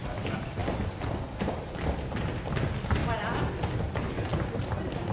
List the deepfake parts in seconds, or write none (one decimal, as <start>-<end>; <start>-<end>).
3.0-3.7